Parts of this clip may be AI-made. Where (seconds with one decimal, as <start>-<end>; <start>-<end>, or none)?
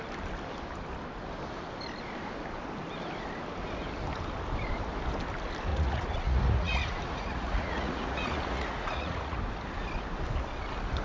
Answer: 5.7-9.4